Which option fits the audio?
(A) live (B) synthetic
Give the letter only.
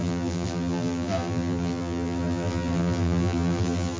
B